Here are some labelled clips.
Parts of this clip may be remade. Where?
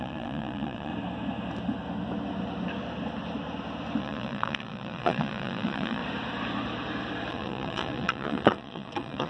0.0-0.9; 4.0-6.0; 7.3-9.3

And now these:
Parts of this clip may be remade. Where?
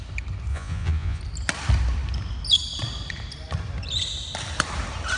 0.5-1.2